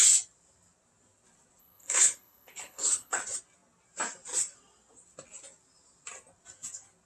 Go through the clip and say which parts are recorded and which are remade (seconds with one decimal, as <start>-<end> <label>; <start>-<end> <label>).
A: 0.0-1.6 recorded; 1.6-3.2 remade; 3.2-7.1 recorded

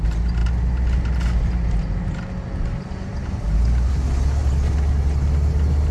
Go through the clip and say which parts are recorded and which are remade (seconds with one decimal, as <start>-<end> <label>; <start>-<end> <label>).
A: 0.0-5.9 recorded

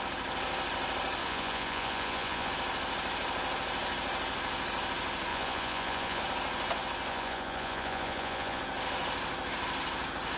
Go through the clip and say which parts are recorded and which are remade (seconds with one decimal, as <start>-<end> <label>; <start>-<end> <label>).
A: 0.0-1.2 recorded; 1.2-2.5 remade; 2.5-5.3 recorded; 5.3-6.2 remade; 6.2-7.1 recorded; 7.1-8.6 remade; 8.6-10.4 recorded

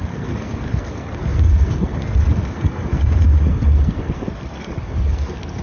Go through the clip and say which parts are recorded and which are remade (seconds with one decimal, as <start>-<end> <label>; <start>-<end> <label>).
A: 0.0-5.6 remade

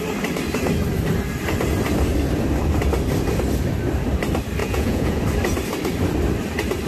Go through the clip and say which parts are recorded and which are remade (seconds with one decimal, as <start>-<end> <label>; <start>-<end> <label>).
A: 0.0-4.6 recorded; 4.6-5.2 remade; 5.2-6.9 recorded